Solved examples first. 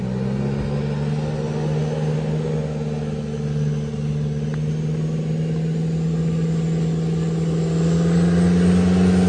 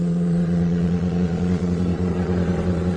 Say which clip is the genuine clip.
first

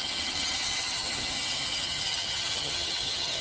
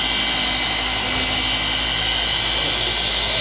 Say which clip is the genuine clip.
second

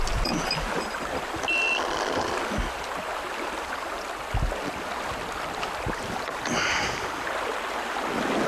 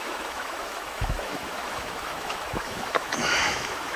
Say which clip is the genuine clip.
first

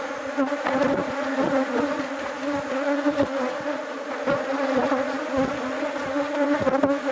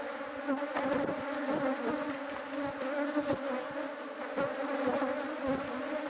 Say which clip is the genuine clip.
second